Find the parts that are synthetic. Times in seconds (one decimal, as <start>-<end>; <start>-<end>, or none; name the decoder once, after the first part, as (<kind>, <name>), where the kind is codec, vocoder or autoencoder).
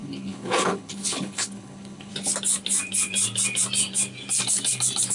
0.0-2.1 (codec, HILCodec)